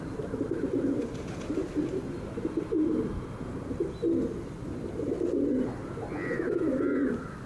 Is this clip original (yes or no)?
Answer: yes